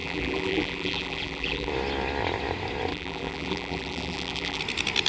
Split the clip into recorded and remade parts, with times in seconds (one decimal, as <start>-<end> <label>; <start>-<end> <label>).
0.0-1.7 remade; 1.7-2.9 recorded; 2.9-4.6 remade; 4.6-5.1 recorded